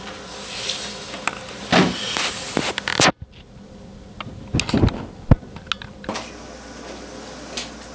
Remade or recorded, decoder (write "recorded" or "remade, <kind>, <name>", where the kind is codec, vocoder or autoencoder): recorded